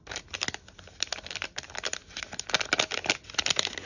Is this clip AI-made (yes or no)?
no